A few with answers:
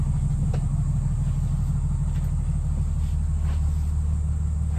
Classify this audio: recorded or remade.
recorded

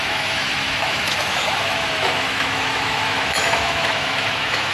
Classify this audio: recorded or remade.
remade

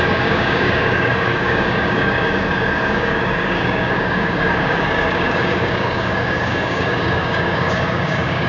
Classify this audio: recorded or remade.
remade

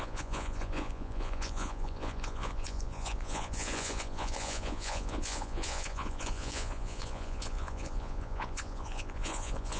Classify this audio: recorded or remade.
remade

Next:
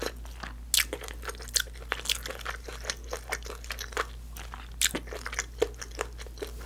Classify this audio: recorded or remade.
recorded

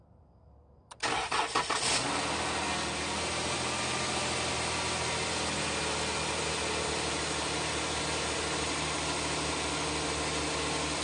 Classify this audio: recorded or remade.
recorded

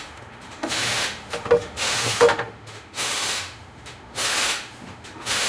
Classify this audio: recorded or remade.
remade